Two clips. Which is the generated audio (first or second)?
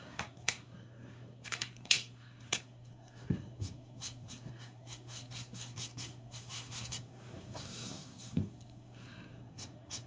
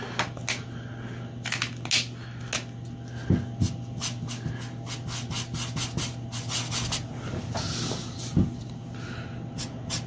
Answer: first